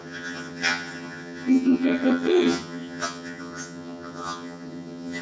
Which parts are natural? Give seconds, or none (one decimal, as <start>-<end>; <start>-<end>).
none

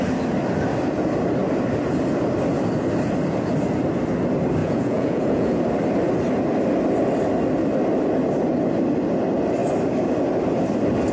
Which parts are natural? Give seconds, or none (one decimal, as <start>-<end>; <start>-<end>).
0.0-4.6; 5.6-11.1

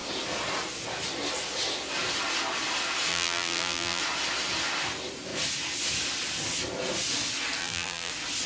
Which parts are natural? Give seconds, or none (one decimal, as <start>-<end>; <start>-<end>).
0.0-3.1; 4.0-7.6; 8.1-8.5